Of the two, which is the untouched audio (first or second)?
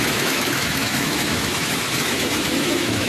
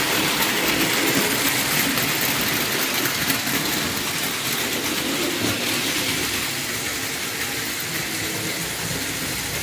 second